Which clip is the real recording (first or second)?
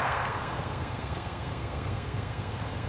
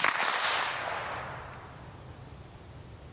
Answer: second